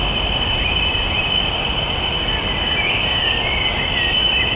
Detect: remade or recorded recorded